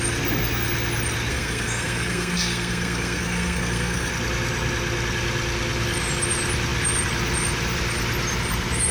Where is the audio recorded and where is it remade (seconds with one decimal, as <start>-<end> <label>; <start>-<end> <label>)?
0.0-1.3 recorded; 1.3-4.1 remade; 4.1-8.9 recorded